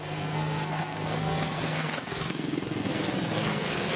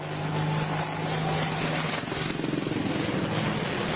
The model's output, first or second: first